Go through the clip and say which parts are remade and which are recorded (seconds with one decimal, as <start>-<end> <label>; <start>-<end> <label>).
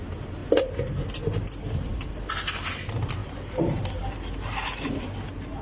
0.0-5.6 recorded